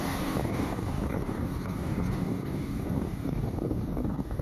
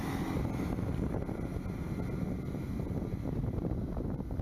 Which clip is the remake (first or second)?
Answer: first